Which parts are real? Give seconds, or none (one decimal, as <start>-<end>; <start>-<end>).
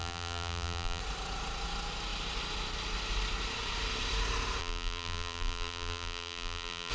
1.0-4.6